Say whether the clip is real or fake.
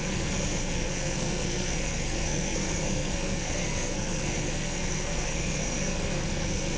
fake